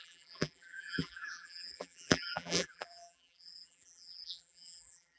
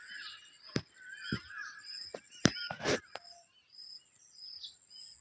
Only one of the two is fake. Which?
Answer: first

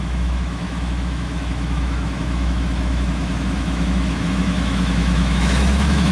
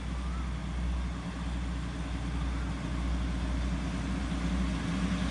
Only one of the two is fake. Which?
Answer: first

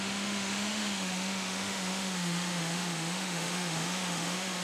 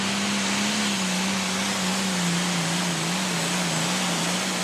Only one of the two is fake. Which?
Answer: first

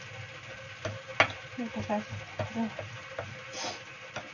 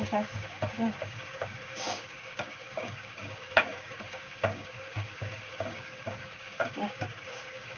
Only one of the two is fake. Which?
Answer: second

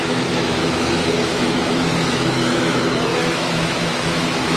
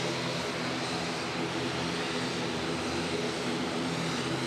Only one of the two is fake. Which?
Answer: first